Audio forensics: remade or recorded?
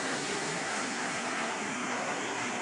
remade